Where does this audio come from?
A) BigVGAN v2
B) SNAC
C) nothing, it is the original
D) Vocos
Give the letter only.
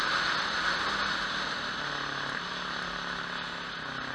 C